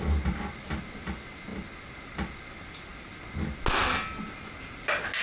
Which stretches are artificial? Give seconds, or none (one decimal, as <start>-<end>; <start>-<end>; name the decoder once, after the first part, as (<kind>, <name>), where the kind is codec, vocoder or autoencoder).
none